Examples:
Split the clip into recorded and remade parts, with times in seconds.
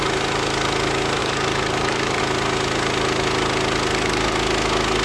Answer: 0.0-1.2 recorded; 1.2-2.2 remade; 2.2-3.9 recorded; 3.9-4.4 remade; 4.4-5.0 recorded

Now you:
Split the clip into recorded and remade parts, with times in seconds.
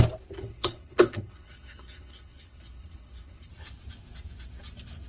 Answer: 0.0-0.4 recorded; 0.4-3.5 remade; 3.5-5.1 recorded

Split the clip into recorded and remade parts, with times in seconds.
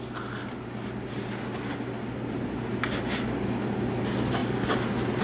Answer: 0.0-5.2 recorded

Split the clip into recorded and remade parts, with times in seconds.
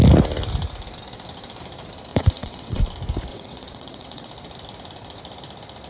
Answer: 0.0-2.1 recorded; 2.1-2.8 remade; 2.8-3.3 recorded; 3.3-4.3 remade; 4.3-5.9 recorded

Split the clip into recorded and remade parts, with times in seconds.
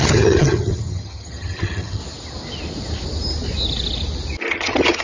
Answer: 0.0-2.0 remade; 2.0-4.5 recorded; 4.5-5.0 remade